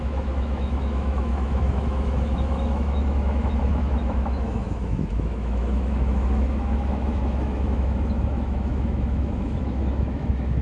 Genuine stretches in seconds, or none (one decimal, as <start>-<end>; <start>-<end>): none